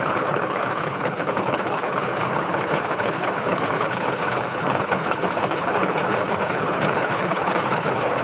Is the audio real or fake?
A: fake